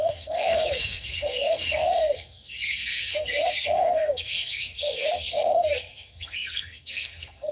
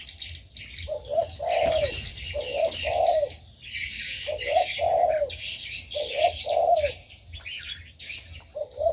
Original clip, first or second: second